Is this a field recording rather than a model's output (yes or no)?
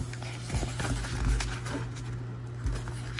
yes